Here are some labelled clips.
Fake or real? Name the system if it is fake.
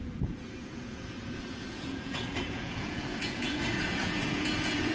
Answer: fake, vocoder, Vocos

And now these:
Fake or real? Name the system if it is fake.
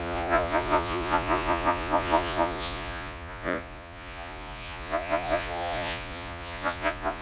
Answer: fake, vocoder, Vocos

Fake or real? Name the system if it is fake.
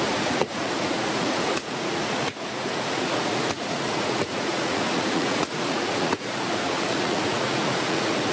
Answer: fake, vocoder, Vocos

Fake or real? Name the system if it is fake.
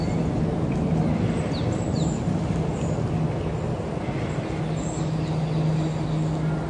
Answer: real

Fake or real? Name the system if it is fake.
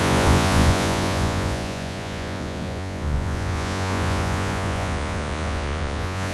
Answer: fake, vocoder, Vocos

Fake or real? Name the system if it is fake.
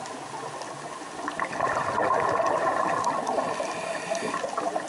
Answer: real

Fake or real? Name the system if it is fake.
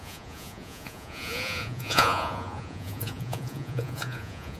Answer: fake, vocoder, Vocos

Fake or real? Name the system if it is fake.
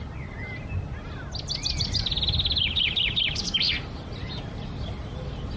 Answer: real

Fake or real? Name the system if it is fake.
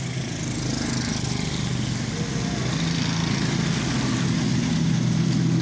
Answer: real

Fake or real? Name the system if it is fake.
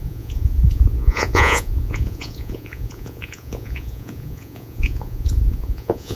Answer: fake, vocoder, Vocos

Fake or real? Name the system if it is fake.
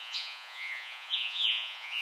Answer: fake, vocoder, Vocos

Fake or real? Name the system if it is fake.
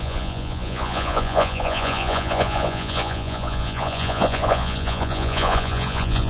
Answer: fake, vocoder, Vocos